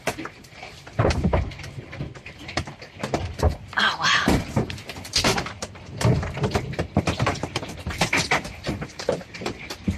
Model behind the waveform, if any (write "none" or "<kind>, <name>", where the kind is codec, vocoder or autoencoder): vocoder, BigVGAN v2